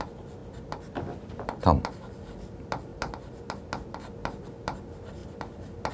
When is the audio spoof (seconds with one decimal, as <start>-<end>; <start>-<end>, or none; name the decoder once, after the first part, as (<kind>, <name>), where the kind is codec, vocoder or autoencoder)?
none